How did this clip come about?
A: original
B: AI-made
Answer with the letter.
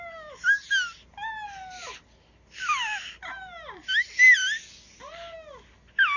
A